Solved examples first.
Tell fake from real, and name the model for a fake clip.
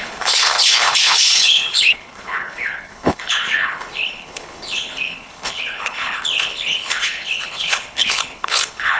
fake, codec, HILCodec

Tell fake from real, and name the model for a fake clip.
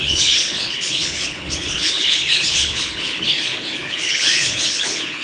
fake, codec, HILCodec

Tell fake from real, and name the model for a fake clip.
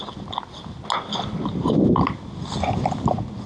real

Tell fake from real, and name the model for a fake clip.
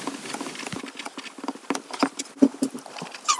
real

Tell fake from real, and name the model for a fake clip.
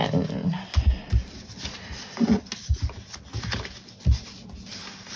real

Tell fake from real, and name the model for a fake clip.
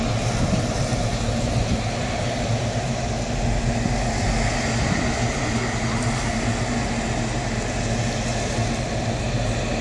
real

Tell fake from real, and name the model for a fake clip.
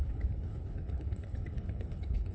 fake, codec, HILCodec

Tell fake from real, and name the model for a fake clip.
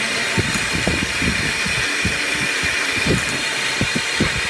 real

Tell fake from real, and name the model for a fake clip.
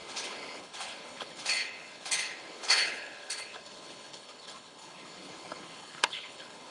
fake, codec, HILCodec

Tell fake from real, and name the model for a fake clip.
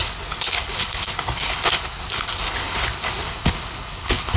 fake, codec, HILCodec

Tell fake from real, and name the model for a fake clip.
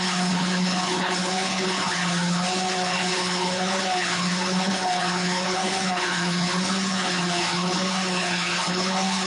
fake, codec, HILCodec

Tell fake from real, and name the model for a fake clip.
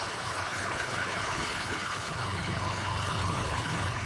fake, codec, HILCodec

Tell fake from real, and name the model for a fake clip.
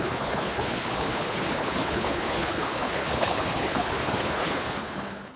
fake, codec, HILCodec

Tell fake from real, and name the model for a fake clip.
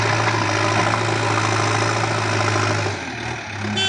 real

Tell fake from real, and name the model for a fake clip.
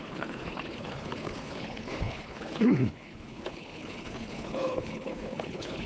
fake, codec, HILCodec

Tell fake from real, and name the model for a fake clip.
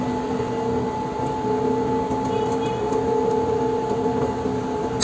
real